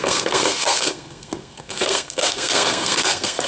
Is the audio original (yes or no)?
no